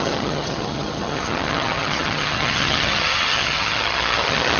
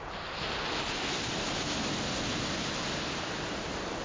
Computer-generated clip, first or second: first